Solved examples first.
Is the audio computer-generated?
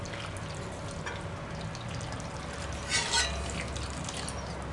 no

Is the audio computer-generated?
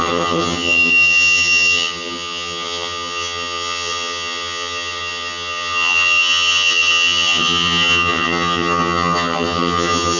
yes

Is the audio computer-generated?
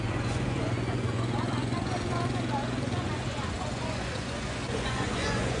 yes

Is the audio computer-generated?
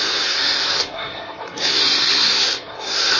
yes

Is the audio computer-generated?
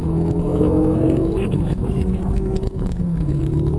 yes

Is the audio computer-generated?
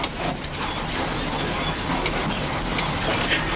no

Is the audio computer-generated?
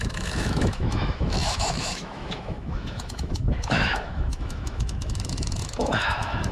yes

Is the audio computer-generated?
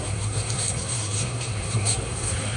yes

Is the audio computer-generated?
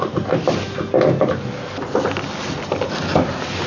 no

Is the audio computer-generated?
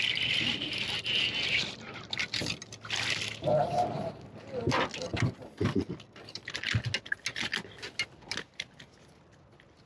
no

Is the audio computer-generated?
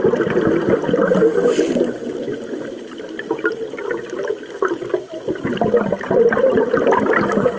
no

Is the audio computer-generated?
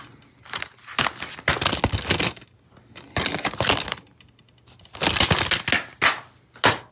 no